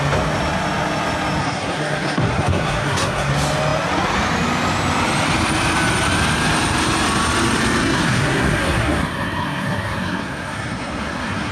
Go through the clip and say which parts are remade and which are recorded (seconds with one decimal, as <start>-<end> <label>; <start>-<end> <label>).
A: 0.0-1.4 recorded; 1.4-3.3 remade; 3.3-7.8 recorded; 7.8-11.5 remade